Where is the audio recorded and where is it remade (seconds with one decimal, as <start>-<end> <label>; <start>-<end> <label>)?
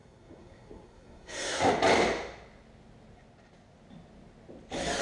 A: 0.0-1.7 remade; 1.7-5.0 recorded